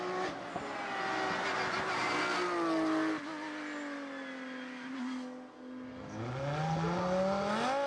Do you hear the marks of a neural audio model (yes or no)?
no